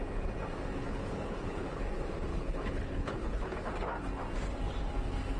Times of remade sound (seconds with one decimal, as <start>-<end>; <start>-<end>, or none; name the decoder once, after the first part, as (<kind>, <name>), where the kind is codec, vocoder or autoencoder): 0.8-1.8 (codec, HILCodec); 2.3-3.7